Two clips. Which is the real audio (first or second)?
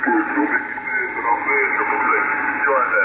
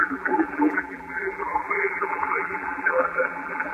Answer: first